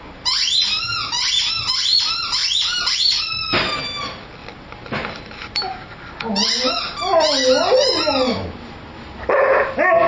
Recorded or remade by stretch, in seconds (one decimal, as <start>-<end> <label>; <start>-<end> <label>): 0.0-10.1 recorded